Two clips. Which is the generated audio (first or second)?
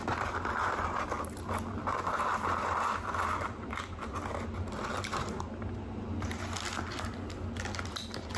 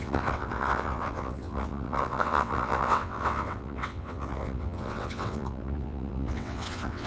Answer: second